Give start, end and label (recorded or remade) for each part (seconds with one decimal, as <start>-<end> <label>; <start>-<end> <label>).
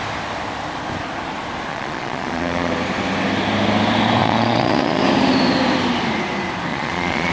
0.0-1.7 recorded; 1.7-2.7 remade; 2.7-4.2 recorded; 4.2-5.0 remade; 5.0-6.7 recorded; 6.7-7.3 remade